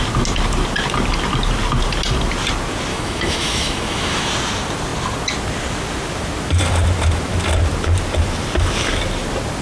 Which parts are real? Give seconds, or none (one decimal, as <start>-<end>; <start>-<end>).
0.0-2.9; 4.3-9.6